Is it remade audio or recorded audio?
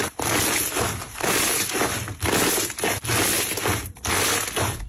recorded